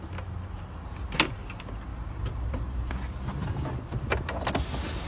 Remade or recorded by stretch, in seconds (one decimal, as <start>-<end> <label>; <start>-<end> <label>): 0.0-1.9 recorded; 1.9-2.9 remade; 2.9-5.1 recorded